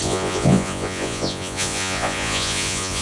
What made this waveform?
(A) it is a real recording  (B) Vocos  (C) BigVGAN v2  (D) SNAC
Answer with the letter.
B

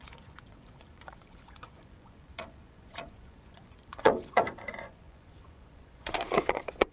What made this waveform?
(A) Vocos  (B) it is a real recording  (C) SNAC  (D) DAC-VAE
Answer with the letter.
A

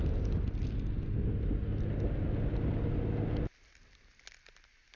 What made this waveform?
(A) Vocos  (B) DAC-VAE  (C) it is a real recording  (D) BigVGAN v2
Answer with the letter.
C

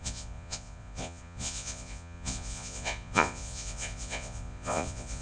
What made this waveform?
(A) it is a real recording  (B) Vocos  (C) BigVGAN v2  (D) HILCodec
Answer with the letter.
B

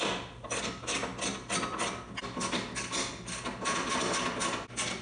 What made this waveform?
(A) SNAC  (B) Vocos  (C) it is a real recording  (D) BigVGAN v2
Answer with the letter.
C